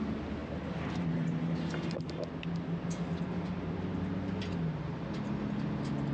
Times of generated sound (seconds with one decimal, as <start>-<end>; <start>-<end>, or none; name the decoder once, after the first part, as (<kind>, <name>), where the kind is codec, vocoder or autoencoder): none